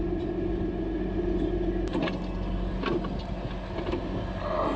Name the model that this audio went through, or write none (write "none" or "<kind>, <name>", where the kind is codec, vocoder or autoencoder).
none